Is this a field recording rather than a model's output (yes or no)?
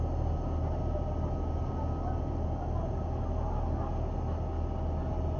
yes